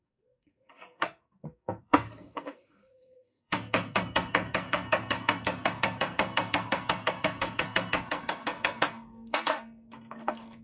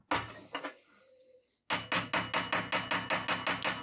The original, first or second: second